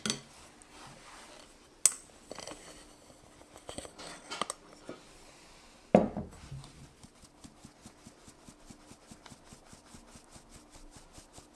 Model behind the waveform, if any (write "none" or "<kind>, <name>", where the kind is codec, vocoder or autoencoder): none